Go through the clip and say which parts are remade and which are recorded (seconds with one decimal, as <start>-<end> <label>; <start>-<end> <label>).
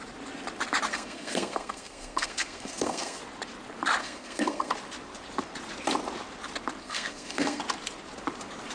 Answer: 0.0-0.9 recorded; 0.9-3.2 remade; 3.2-4.0 recorded; 4.0-4.7 remade; 4.7-6.8 recorded; 6.8-7.6 remade; 7.6-8.7 recorded